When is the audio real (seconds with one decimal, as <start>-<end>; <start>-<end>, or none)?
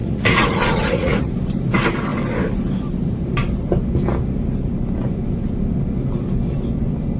1.3-7.2